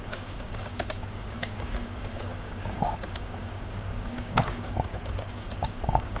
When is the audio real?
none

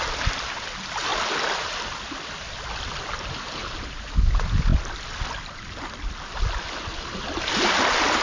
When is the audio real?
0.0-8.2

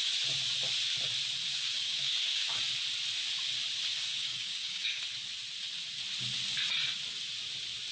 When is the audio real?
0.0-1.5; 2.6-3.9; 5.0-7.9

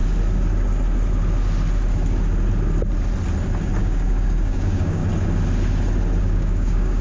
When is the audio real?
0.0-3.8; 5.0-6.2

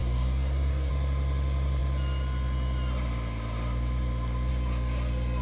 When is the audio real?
0.9-5.4

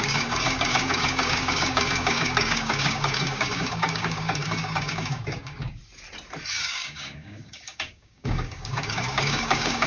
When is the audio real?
5.8-6.5

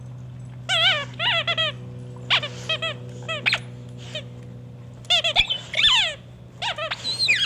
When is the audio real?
0.0-7.5